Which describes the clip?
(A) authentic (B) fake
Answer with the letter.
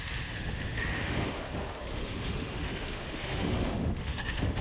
B